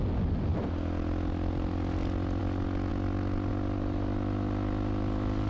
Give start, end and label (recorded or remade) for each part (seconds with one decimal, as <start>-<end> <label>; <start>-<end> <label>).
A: 0.0-5.5 recorded